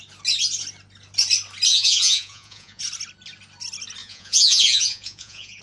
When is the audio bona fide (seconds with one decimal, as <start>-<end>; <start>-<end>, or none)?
0.0-1.7; 2.8-4.0